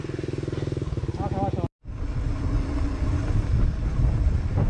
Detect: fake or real real